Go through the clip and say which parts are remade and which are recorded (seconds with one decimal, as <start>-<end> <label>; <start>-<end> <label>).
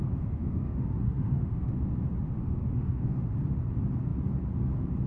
0.0-0.4 recorded; 0.4-1.7 remade; 1.7-2.4 recorded; 2.4-3.2 remade; 3.2-5.1 recorded